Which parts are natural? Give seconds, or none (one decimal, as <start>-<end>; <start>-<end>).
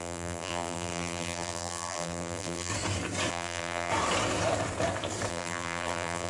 2.7-3.3; 3.9-5.3